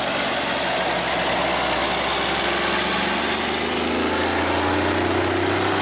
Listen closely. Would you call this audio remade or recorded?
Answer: recorded